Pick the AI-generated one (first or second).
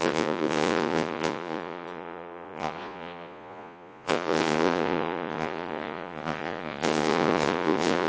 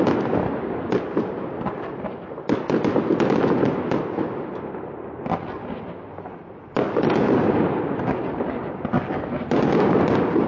first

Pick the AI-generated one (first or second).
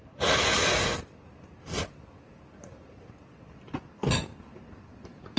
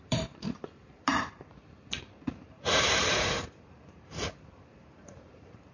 second